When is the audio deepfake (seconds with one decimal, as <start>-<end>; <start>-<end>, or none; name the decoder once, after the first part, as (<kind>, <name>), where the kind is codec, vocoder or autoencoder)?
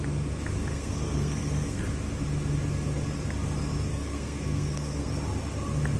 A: 0.7-1.8 (codec, SNAC); 3.9-5.1